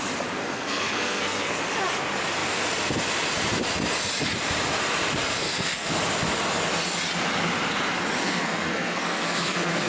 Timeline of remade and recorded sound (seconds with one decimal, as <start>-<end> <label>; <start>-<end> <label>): 0.0-0.4 recorded; 0.4-1.6 remade; 1.6-5.4 recorded; 5.4-6.0 remade; 6.0-8.2 recorded; 8.2-9.9 remade